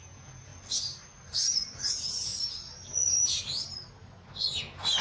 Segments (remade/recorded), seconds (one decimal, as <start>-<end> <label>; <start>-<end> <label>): 0.0-0.5 remade; 0.5-1.9 recorded; 1.9-2.3 remade; 2.3-4.5 recorded; 4.5-5.0 remade